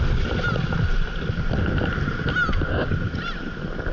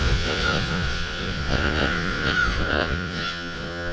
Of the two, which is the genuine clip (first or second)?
first